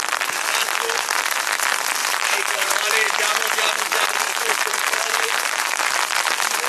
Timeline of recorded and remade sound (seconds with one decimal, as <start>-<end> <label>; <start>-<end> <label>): 0.0-2.0 recorded; 2.0-6.0 remade; 6.0-6.7 recorded